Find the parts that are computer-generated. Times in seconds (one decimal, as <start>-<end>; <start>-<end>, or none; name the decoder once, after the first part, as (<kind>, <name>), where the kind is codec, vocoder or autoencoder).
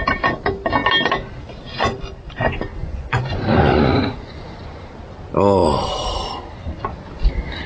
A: 2.8-4.8 (vocoder, Vocos)